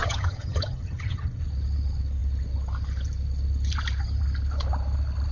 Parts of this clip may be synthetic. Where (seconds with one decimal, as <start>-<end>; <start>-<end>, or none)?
0.0-1.4